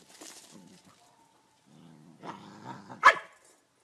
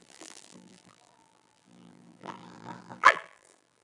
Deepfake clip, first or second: second